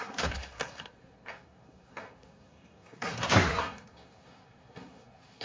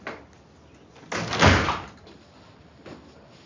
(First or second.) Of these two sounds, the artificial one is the first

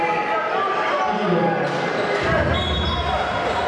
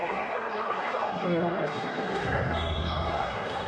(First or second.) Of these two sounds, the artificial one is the second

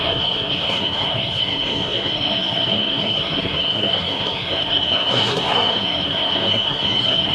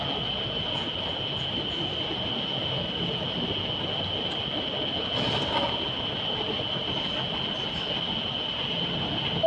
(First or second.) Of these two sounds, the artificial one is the first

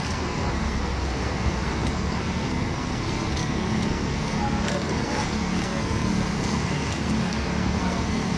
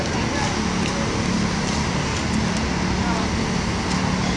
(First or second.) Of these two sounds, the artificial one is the first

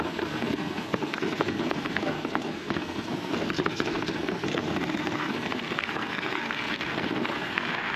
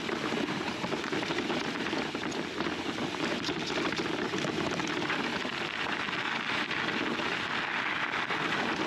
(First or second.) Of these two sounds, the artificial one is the first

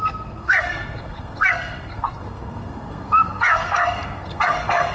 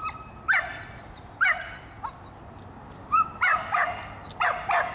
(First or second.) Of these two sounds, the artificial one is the first